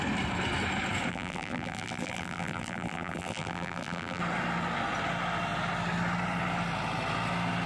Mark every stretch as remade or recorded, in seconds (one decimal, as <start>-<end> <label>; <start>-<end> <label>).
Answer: 0.0-1.1 recorded; 1.1-4.2 remade; 4.2-7.7 recorded